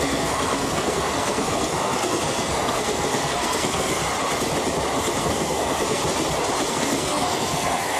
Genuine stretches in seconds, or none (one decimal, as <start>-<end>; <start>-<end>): 4.0-5.2; 6.0-6.7